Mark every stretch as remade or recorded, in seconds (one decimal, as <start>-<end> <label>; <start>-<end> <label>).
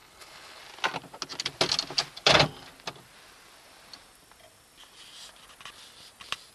0.0-0.6 remade; 0.6-6.5 recorded